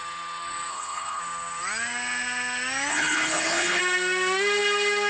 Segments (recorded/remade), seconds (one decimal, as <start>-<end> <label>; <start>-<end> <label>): 0.0-0.7 recorded; 0.7-1.2 remade; 1.2-2.9 recorded; 2.9-3.8 remade; 3.8-5.1 recorded